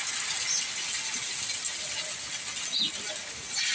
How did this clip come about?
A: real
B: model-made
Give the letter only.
A